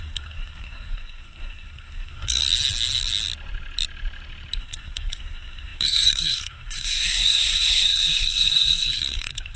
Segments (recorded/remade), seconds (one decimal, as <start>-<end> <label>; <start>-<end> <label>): 0.0-2.4 remade; 2.4-4.6 recorded; 4.6-9.6 remade